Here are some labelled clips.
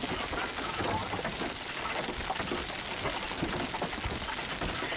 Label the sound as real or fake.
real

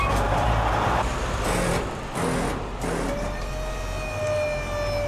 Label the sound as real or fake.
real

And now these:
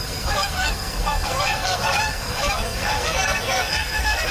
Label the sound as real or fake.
fake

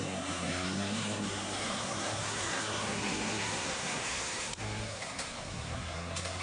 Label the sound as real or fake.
fake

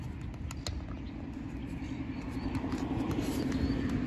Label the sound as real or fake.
real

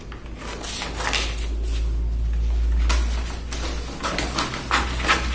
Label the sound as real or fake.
real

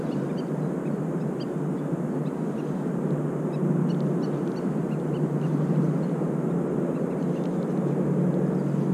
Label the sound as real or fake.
real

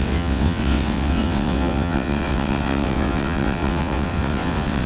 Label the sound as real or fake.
fake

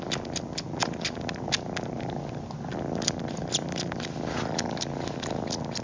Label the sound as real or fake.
real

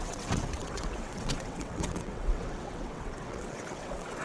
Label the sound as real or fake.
fake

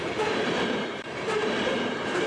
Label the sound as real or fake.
fake